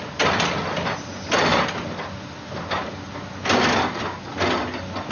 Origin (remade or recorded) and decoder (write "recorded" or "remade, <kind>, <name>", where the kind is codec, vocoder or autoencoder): recorded